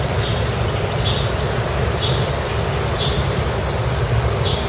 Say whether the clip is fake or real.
real